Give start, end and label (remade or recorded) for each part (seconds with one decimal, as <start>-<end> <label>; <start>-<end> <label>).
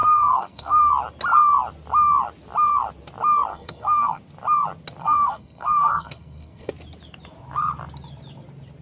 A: 0.0-0.9 remade; 0.9-3.5 recorded; 3.5-4.2 remade; 4.2-5.0 recorded; 5.0-6.7 remade; 6.7-8.8 recorded